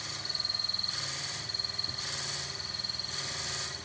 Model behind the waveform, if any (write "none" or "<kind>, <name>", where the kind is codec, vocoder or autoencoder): none